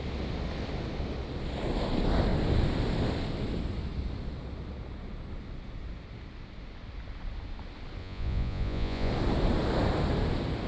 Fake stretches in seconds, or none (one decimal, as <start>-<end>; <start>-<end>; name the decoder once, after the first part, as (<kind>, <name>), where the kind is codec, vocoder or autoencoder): 8.0-9.1 (vocoder, Vocos)